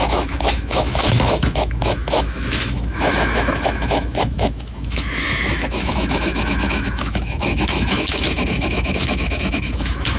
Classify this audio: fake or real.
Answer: fake